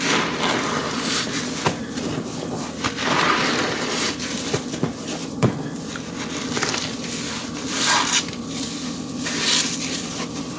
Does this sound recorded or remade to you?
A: remade